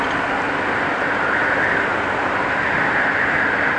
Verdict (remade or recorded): recorded